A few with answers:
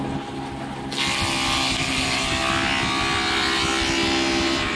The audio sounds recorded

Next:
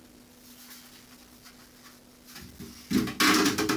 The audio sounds recorded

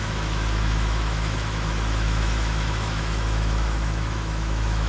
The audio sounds remade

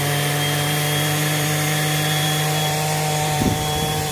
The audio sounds remade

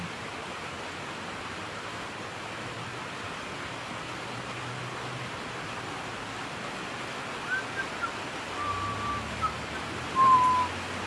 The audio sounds recorded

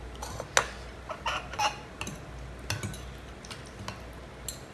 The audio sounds recorded